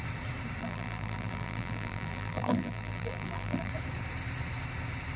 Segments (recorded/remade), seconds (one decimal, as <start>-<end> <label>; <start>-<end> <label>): 0.0-0.6 recorded; 0.6-3.7 remade; 3.7-5.2 recorded